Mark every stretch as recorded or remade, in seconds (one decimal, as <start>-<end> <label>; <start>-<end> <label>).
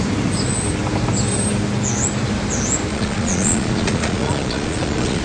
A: 0.0-2.9 recorded; 2.9-5.2 remade